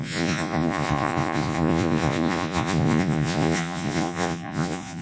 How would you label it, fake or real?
fake